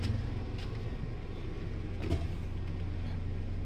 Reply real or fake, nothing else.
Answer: real